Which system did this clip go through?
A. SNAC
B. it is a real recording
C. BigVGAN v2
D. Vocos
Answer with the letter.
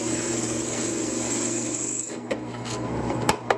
A